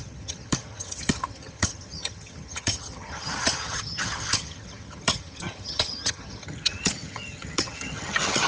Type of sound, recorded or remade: remade